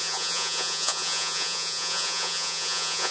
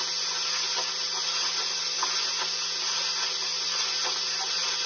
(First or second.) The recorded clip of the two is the second